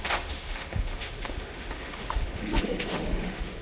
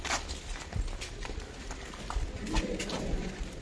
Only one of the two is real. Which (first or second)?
second